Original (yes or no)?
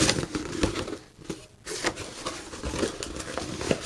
yes